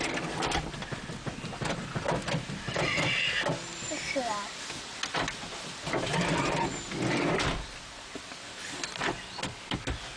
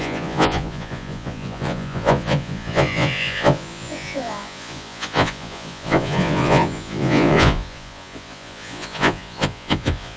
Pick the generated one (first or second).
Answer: second